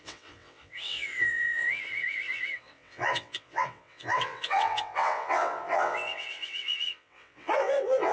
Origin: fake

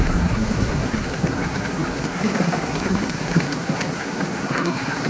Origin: fake